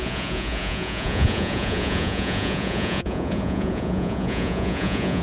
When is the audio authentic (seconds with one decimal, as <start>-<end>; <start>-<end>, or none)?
none